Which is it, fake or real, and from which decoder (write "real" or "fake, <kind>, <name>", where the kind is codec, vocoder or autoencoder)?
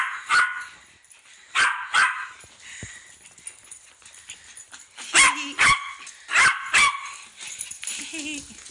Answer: real